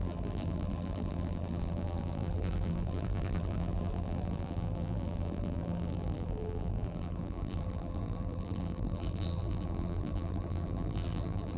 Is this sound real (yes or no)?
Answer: no